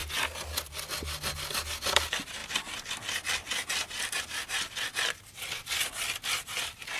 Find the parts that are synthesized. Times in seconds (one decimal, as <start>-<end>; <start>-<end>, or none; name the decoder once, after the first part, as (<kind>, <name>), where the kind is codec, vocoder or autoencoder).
none